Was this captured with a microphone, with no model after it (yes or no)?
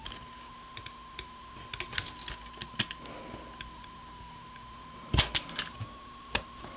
yes